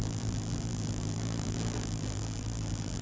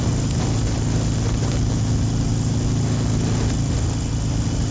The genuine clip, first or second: second